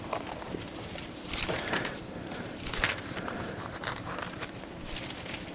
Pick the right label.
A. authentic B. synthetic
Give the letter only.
B